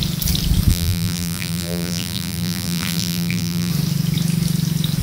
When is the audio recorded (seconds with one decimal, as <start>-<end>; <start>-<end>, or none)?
0.0-0.7; 3.7-5.0

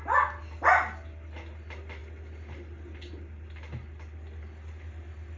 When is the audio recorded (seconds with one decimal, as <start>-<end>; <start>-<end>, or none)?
0.0-5.4

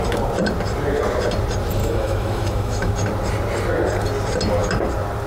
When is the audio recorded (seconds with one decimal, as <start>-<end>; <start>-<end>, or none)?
0.0-1.8; 2.9-5.3

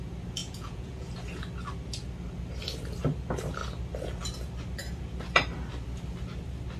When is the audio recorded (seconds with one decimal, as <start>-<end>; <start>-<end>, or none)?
0.0-0.4; 1.1-6.8